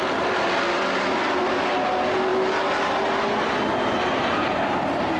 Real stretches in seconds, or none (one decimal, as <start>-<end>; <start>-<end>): 0.0-5.2